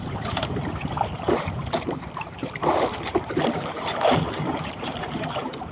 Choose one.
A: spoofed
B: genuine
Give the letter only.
A